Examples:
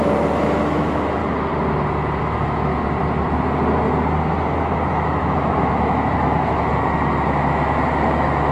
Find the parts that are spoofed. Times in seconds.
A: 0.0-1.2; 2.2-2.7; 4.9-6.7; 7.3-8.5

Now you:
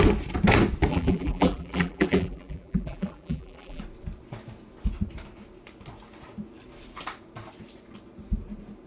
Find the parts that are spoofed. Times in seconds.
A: 0.9-3.8